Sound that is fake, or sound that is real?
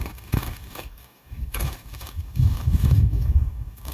fake